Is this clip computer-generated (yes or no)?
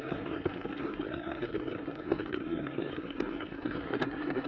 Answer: yes